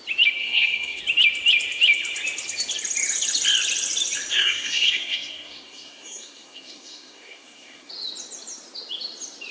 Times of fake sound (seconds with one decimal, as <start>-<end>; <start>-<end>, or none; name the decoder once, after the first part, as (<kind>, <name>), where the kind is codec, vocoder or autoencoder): 0.4-1.0 (codec, SNAC); 4.3-7.9